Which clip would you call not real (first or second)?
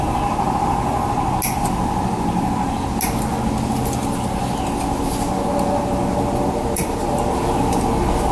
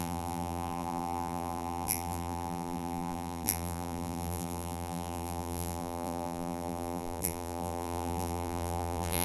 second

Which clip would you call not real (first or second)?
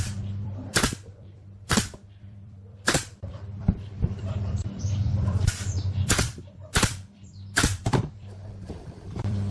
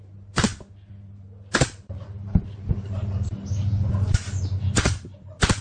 first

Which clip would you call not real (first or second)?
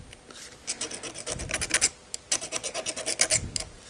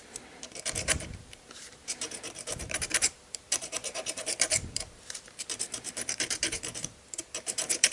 second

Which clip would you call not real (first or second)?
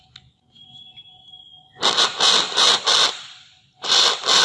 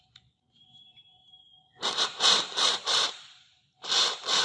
second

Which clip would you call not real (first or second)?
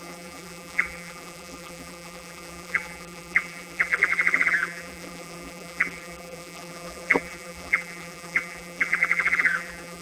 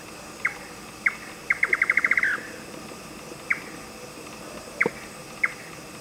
first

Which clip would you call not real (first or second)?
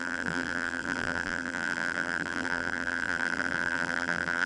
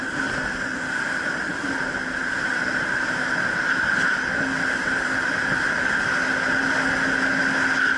first